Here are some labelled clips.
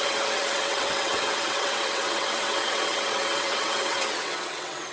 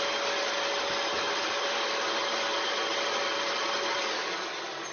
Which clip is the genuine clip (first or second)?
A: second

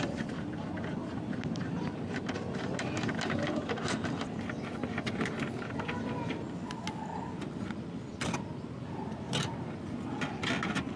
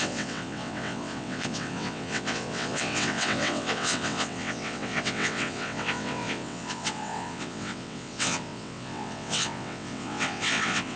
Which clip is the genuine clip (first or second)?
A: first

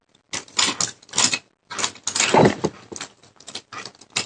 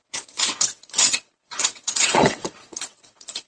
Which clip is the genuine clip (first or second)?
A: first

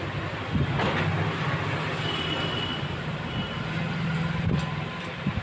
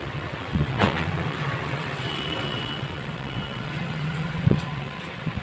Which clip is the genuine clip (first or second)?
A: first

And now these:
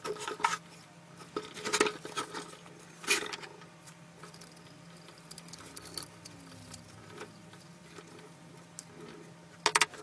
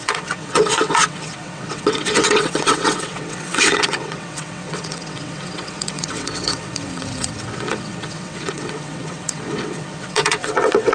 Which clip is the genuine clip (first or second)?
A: first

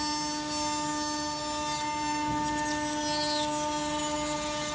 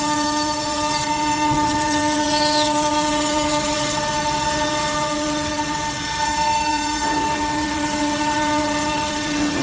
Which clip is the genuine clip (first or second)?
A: first